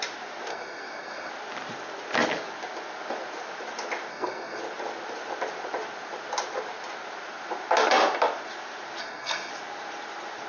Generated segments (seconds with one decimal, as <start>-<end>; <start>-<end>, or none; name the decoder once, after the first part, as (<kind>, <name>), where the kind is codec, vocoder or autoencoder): 0.5-1.3 (codec, SNAC); 4.1-4.6; 9.0-9.5